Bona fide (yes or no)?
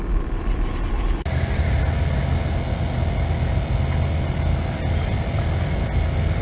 yes